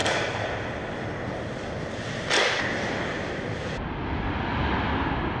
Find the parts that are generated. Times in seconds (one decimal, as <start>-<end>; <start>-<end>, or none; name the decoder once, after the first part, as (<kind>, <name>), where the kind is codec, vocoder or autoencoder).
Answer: none